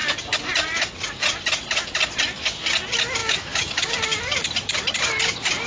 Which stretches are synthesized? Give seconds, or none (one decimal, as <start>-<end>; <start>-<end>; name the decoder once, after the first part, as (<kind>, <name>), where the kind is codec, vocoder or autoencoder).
3.2-3.9 (autoencoder, DAC-VAE)